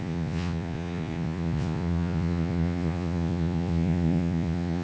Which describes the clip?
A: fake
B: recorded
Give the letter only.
A